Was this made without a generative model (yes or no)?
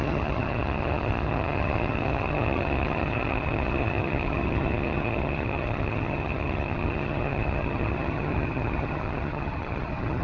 no